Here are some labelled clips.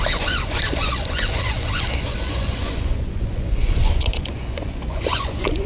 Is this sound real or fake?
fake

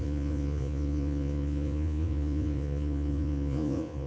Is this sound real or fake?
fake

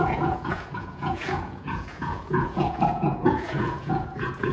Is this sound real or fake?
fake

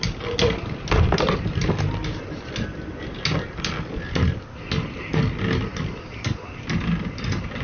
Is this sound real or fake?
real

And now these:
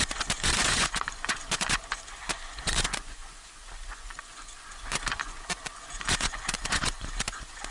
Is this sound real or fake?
fake